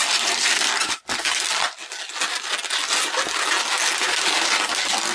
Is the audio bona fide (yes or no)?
yes